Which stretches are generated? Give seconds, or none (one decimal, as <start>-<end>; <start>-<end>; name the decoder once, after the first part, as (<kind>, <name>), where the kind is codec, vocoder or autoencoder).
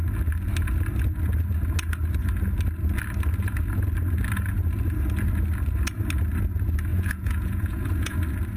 6.9-8.2 (vocoder, Vocos)